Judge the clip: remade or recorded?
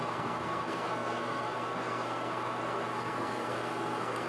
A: remade